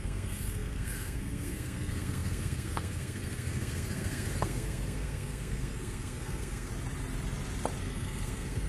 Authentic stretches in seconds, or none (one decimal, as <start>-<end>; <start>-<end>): 6.7-7.8